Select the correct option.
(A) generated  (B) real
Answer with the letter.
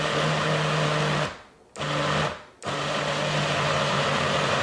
B